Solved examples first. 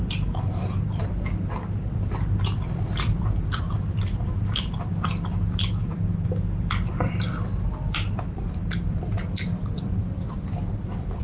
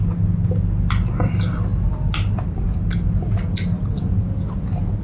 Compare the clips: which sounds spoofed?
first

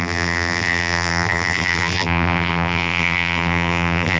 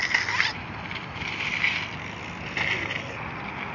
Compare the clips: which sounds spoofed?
first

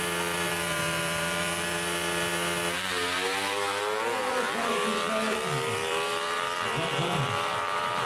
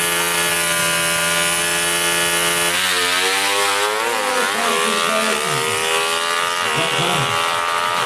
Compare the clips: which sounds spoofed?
first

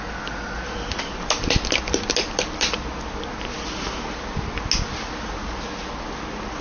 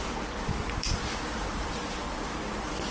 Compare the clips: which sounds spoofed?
second